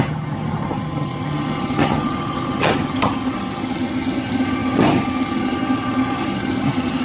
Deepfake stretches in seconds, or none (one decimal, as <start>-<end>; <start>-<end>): 0.0-7.0